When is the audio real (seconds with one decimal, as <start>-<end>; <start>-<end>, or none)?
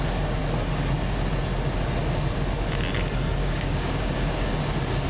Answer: 0.0-3.4; 4.5-5.1